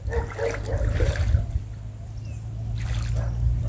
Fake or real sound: real